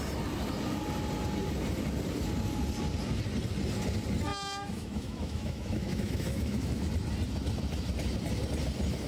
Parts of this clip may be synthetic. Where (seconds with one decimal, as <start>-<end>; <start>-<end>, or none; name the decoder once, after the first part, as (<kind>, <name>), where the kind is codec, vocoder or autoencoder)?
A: 4.3-6.9 (autoencoder, DAC-VAE)